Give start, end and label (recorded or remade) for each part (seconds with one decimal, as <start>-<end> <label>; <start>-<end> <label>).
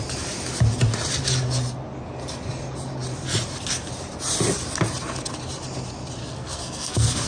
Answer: 0.0-6.2 recorded; 6.2-7.3 remade